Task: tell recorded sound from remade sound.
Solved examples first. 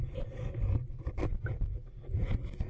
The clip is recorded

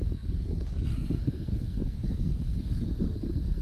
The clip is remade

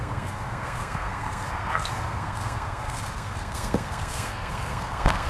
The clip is remade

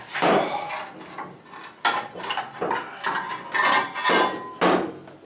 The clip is recorded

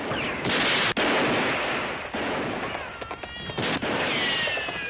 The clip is recorded